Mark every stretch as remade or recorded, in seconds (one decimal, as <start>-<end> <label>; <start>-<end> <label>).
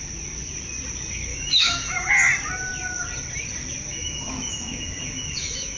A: 0.0-1.3 recorded; 1.3-2.1 remade; 2.1-3.9 recorded; 3.9-5.8 remade